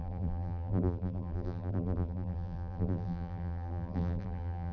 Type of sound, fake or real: fake